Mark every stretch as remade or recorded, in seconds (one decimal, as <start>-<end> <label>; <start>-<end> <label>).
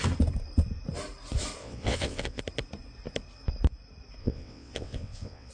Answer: 0.0-1.6 recorded; 1.6-2.4 remade; 2.4-4.2 recorded; 4.2-5.5 remade